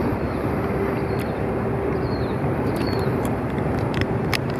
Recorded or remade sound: remade